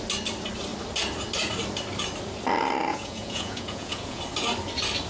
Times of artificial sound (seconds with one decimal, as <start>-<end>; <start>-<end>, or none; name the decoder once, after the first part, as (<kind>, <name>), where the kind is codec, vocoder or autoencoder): 2.9-4.2 (vocoder, Vocos)